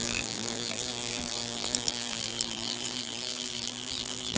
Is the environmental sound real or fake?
fake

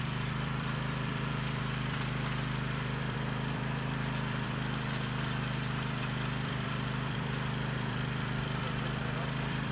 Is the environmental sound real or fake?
fake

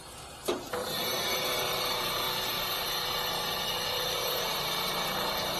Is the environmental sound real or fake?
fake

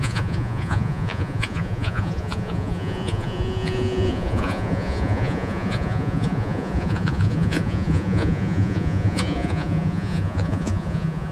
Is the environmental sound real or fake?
fake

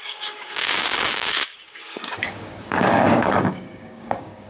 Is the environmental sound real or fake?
fake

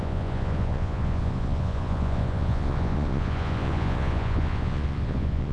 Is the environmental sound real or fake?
fake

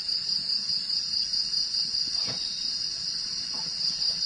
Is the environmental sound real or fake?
real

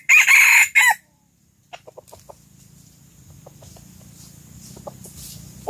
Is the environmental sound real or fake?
real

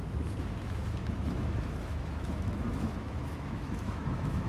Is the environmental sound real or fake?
fake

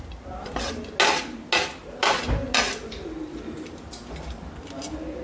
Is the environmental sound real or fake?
real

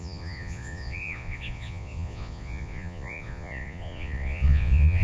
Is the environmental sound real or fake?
fake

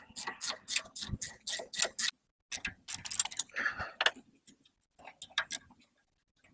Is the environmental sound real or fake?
real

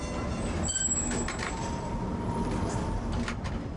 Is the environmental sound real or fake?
real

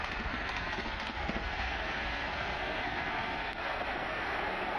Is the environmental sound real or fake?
fake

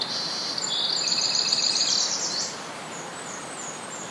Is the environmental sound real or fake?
fake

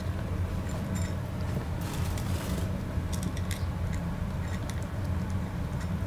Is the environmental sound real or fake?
fake